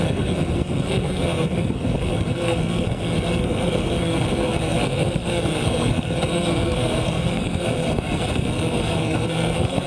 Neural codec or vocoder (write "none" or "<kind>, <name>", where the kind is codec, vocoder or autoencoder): codec, SNAC